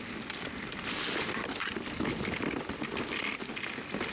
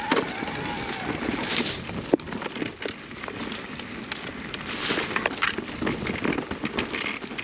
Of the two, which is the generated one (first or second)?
first